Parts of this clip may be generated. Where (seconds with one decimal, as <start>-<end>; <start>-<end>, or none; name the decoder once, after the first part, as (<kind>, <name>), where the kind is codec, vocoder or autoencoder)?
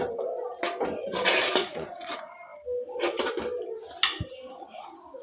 1.6-2.1 (vocoder, Vocos)